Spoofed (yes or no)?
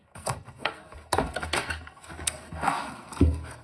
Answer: yes